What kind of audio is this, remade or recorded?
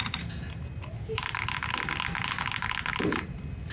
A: recorded